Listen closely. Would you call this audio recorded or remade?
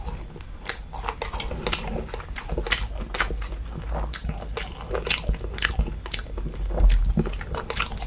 recorded